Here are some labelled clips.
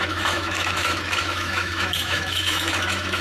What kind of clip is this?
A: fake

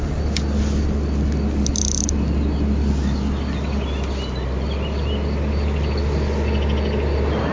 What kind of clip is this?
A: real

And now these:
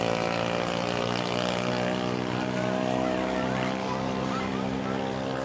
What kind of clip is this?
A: real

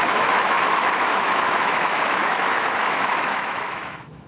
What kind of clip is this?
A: fake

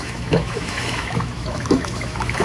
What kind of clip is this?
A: fake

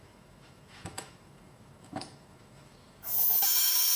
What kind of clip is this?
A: fake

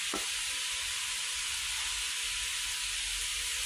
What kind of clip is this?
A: real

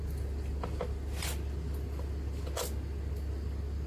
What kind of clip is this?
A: real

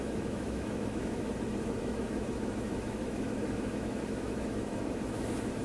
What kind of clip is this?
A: fake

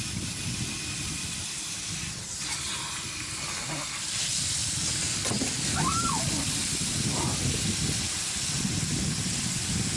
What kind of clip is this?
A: real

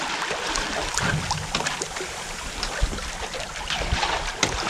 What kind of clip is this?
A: real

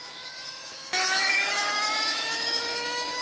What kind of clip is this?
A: fake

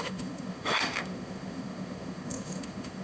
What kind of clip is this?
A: fake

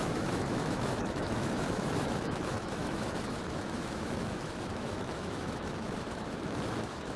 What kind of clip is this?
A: fake